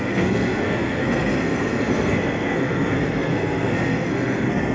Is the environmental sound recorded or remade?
remade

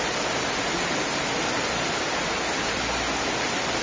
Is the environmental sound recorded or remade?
recorded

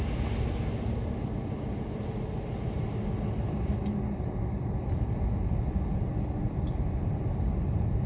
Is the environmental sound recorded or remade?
recorded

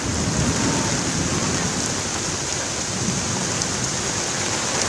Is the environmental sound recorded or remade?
recorded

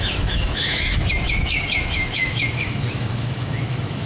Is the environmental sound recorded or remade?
remade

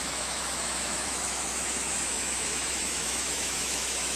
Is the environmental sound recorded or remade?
remade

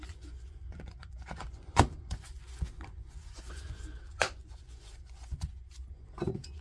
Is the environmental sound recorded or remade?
remade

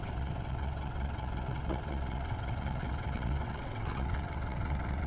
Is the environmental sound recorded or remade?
remade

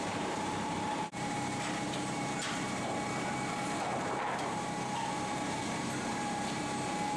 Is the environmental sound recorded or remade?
remade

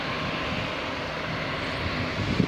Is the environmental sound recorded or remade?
recorded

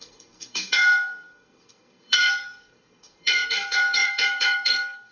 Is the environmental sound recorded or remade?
remade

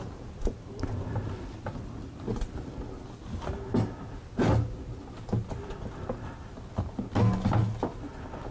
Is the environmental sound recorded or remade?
recorded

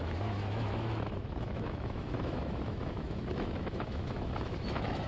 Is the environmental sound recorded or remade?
remade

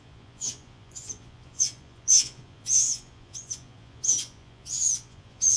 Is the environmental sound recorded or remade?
remade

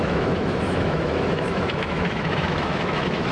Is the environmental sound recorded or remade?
remade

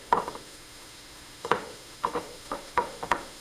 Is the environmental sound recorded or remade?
remade